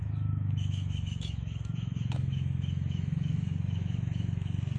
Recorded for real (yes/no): no